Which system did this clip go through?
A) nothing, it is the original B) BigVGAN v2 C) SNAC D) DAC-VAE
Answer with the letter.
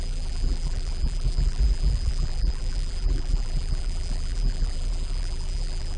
B